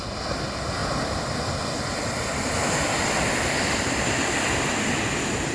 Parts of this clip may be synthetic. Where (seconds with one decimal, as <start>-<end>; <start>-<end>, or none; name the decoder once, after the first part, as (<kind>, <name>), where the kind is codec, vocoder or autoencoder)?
none